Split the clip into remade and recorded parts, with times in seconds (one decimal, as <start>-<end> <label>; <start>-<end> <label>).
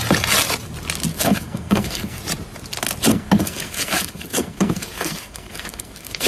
0.0-1.1 recorded; 1.1-2.2 remade; 2.2-3.1 recorded; 3.1-6.3 remade